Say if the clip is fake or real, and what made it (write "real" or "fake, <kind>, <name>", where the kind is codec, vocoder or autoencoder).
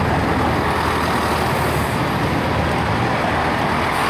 real